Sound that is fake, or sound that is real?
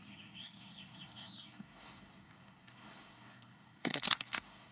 fake